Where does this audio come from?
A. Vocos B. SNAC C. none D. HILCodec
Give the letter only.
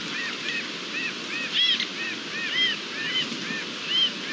C